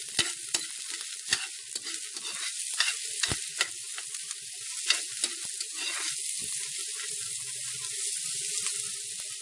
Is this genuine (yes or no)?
yes